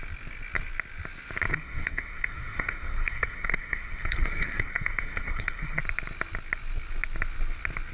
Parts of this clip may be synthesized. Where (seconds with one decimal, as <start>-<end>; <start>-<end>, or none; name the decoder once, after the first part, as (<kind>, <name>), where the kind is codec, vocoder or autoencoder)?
1.5-5.8 (codec, SNAC)